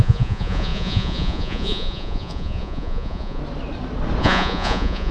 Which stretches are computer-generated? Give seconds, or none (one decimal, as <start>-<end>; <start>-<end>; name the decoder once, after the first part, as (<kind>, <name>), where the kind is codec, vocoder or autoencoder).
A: 0.0-3.4 (vocoder, Vocos); 4.2-5.1